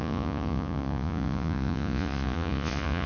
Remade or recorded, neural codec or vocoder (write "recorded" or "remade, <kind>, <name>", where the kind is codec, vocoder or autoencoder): remade, vocoder, Vocos